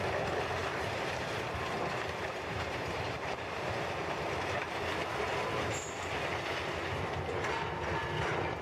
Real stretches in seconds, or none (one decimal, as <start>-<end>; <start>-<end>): 0.0-0.6; 4.6-8.6